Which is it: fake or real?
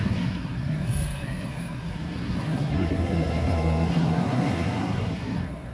fake